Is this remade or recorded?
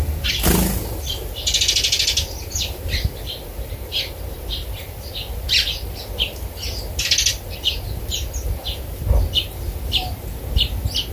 recorded